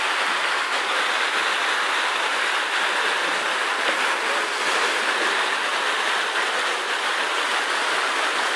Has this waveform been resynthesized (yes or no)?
no